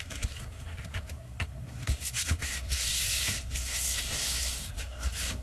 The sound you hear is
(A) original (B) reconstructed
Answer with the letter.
B